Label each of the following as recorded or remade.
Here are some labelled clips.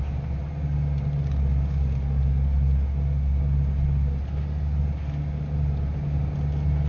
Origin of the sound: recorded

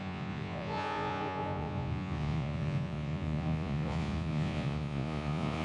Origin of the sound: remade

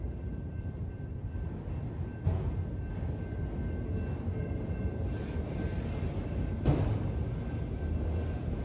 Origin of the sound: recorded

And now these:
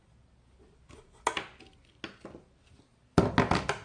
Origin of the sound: recorded